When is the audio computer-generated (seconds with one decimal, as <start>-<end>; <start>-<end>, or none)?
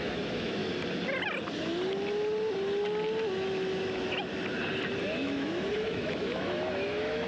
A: 0.0-0.6; 3.9-4.3; 5.0-7.3